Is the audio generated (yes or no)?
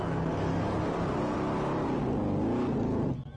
no